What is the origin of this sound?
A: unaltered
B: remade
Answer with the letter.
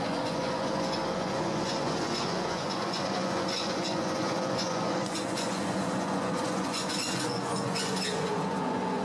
B